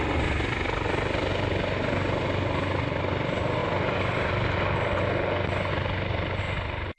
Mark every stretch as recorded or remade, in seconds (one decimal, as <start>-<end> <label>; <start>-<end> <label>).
0.0-7.0 recorded